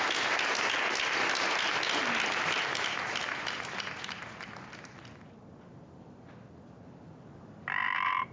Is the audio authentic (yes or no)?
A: yes